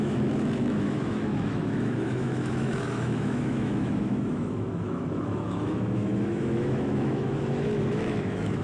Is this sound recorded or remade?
remade